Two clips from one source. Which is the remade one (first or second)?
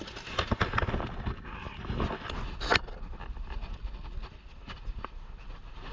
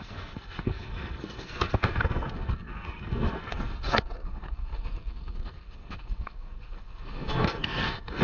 second